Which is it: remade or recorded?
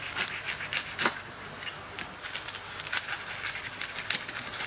recorded